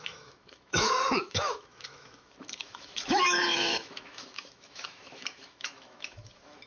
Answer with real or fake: fake